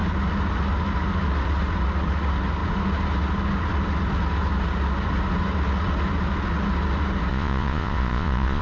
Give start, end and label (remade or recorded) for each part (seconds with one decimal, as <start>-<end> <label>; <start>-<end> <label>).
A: 0.0-7.3 recorded; 7.3-8.6 remade